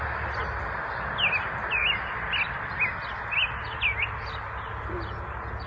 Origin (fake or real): real